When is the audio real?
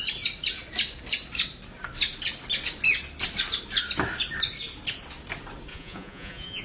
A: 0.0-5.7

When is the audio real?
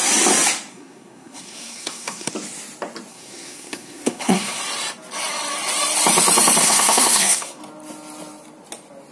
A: 0.0-0.7; 2.3-3.1; 4.6-6.6; 7.6-9.1